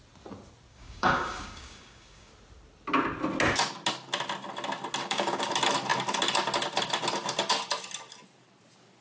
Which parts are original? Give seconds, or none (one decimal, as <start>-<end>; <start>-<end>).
0.0-0.7; 2.3-5.0; 5.5-9.0